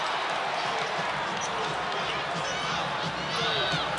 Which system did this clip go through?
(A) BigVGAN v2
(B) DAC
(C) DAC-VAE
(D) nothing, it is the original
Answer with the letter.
D